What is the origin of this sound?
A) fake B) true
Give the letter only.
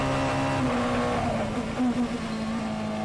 B